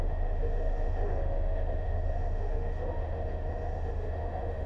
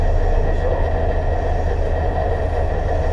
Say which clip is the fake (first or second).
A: first